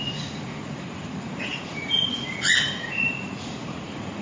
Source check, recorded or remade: remade